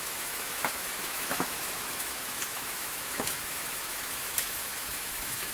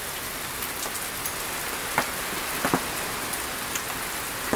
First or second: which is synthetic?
first